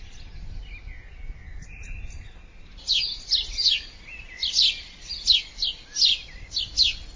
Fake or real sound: real